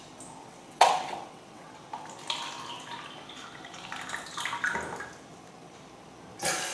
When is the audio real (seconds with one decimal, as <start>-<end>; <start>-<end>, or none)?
0.0-0.4; 1.7-6.7